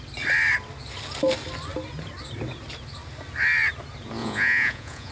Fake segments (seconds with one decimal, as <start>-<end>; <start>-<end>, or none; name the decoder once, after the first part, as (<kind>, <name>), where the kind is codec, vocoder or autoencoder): 4.2-5.1 (vocoder, Vocos)